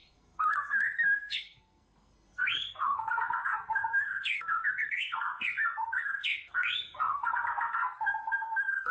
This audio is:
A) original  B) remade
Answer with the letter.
B